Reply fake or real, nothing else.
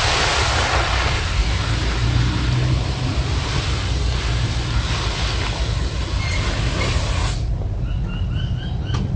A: real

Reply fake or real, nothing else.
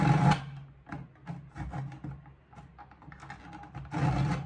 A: real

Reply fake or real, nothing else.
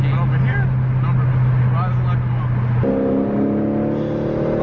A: real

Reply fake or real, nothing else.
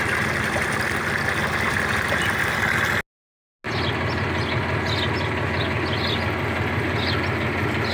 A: real